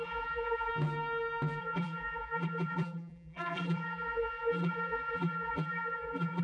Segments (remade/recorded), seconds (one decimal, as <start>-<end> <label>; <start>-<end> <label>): 0.0-0.7 remade; 0.7-1.6 recorded; 1.6-6.4 remade